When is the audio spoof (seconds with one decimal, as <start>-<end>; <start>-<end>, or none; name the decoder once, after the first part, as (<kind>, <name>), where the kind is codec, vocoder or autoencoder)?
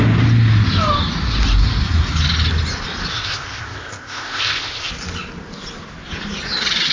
3.1-4.9 (codec, ZipCodec)